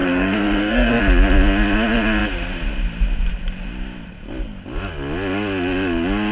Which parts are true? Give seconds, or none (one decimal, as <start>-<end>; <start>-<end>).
1.0-6.3